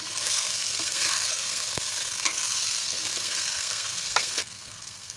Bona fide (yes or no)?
no